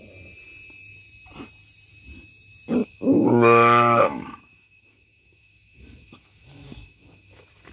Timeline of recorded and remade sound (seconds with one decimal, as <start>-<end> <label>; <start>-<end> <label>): 0.0-2.8 recorded; 2.8-7.7 remade